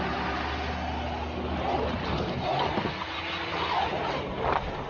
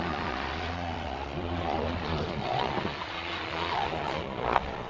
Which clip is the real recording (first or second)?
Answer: first